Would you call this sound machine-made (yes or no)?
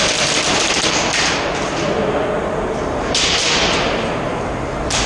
no